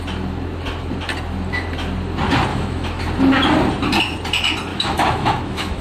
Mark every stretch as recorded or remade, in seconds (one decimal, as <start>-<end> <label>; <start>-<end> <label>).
0.0-2.5 recorded; 2.5-3.0 remade; 3.0-4.7 recorded; 4.7-5.8 remade